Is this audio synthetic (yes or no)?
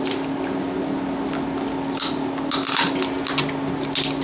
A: no